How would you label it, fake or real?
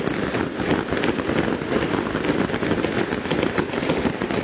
real